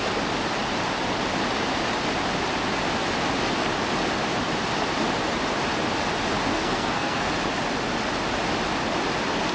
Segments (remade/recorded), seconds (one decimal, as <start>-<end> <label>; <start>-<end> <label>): 0.0-6.5 recorded; 6.5-7.3 remade; 7.3-9.5 recorded